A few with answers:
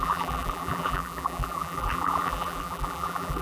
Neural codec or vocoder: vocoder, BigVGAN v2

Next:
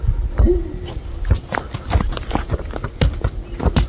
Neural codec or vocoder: none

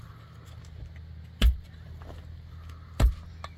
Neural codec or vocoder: none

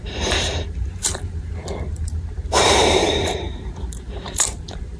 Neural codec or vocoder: vocoder, BigVGAN v2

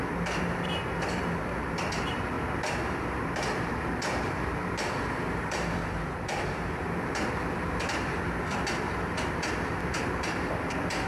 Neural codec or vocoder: vocoder, BigVGAN v2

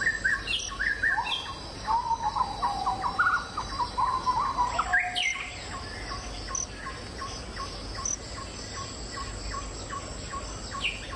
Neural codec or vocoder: none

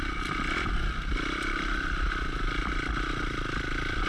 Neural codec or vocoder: none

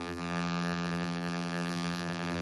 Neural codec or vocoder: vocoder, BigVGAN v2